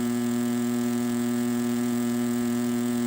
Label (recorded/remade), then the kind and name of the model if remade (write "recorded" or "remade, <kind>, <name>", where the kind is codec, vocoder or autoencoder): remade, vocoder, Vocos